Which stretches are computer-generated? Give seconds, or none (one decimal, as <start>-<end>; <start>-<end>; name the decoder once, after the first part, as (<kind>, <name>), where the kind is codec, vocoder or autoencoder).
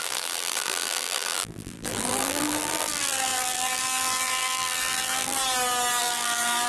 0.0-5.4 (vocoder, BigVGAN v2); 6.0-6.7